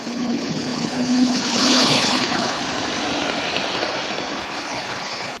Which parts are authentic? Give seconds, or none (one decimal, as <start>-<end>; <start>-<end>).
2.6-4.4